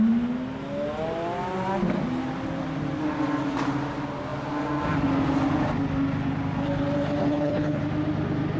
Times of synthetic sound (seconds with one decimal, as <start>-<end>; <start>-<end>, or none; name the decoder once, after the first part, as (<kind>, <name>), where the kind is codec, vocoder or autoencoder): 7.2-7.8 (codec, HILCodec)